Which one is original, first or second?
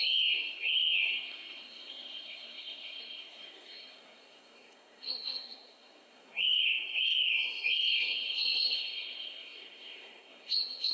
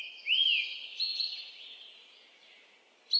second